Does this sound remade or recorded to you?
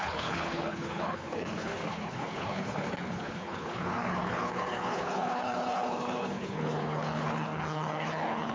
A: remade